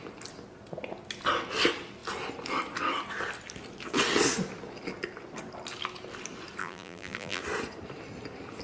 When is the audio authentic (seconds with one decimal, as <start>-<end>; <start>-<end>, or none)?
0.0-6.6; 7.4-8.6